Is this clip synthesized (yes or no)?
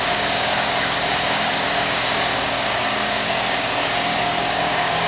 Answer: yes